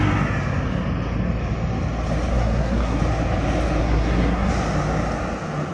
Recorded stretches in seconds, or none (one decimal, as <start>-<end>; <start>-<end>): 0.0-2.3; 3.0-3.8; 4.5-5.7